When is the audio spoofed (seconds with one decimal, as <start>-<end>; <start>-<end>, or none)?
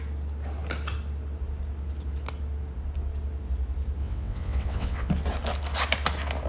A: 4.0-5.1